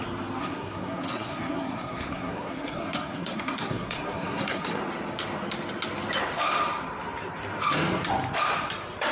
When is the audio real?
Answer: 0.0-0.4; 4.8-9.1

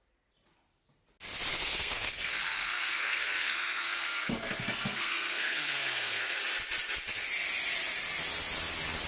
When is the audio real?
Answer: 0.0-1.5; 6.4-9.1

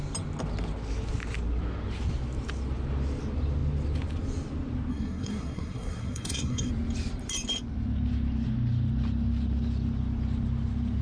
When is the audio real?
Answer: 0.0-4.9; 6.7-11.0

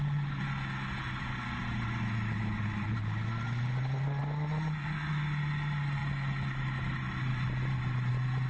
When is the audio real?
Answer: 0.0-8.5